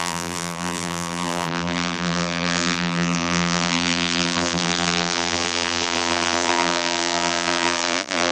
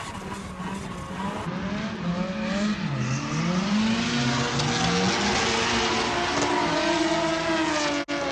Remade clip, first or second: first